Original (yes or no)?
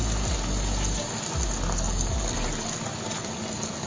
yes